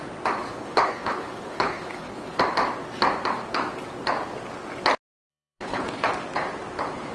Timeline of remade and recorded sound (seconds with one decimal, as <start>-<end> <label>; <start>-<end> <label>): 0.0-0.6 recorded; 0.6-2.4 remade; 2.4-5.3 recorded; 5.3-6.1 remade; 6.1-7.1 recorded